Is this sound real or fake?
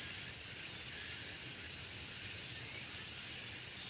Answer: real